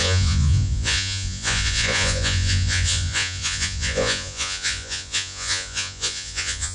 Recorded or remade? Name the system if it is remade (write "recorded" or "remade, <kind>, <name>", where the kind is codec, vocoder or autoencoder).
remade, vocoder, Vocos